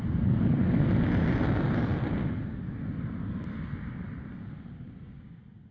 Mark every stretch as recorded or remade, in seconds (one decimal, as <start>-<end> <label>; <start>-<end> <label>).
0.0-5.7 recorded